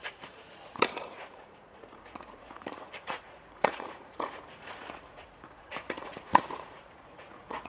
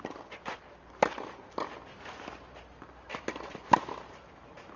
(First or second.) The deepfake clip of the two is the first